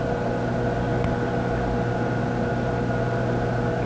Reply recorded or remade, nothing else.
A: recorded